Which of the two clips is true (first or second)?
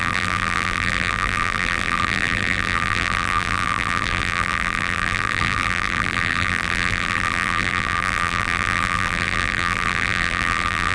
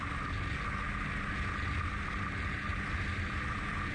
second